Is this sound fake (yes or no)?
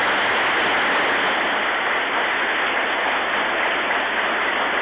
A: no